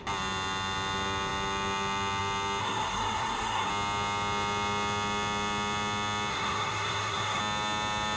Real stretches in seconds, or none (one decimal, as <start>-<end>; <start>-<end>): 0.0-2.6; 3.7-6.3; 7.4-8.2